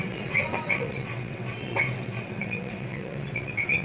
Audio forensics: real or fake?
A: fake